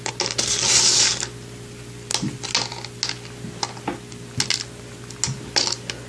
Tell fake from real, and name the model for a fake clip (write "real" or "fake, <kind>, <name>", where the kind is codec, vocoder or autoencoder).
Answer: real